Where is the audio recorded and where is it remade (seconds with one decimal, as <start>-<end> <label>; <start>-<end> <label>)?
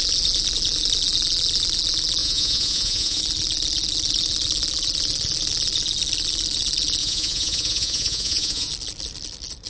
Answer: 0.0-2.2 recorded; 2.2-3.2 remade; 3.2-7.0 recorded; 7.0-8.7 remade; 8.7-9.7 recorded